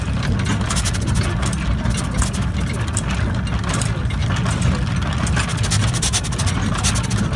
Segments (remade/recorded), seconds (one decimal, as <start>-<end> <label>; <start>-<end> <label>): 0.0-7.4 recorded

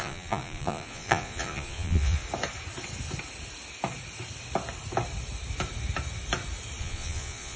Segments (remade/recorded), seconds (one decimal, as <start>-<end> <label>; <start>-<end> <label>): 0.0-2.2 remade; 2.2-6.8 recorded; 6.8-7.6 remade

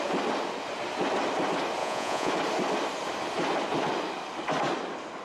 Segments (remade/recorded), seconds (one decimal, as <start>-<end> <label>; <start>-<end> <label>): 0.0-1.8 recorded; 1.8-2.3 remade; 2.3-5.2 recorded